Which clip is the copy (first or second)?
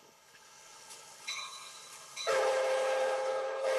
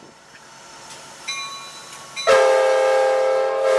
first